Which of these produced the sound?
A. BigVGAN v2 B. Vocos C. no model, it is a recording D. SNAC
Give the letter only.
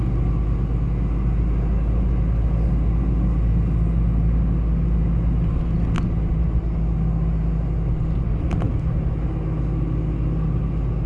C